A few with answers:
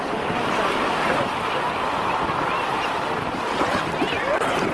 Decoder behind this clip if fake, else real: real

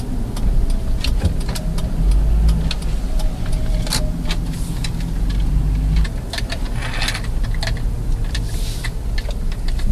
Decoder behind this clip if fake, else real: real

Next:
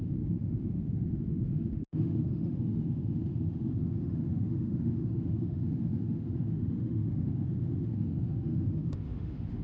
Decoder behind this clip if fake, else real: fake, autoencoder, DAC-VAE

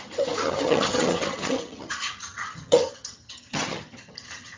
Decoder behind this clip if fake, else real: fake, vocoder, HiFi-GAN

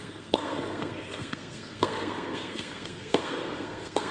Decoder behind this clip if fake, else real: fake, codec, SNAC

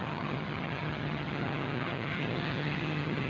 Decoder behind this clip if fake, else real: fake, vocoder, HiFi-GAN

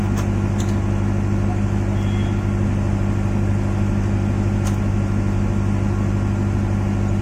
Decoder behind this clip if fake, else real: real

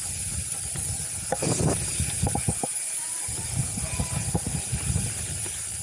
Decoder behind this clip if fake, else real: real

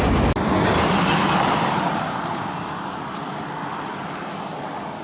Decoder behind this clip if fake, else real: real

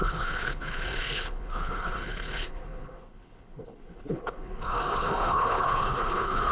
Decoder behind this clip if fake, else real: fake, codec, HILCodec